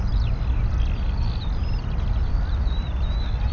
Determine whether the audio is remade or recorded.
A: recorded